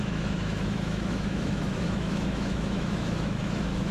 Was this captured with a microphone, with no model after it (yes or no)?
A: no